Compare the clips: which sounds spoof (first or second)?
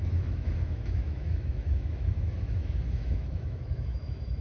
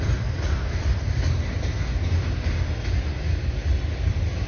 first